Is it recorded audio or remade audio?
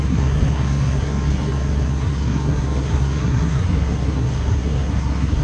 remade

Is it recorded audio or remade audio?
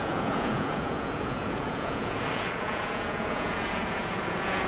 remade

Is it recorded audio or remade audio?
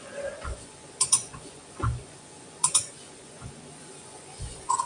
remade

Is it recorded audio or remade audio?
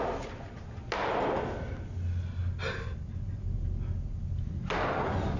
recorded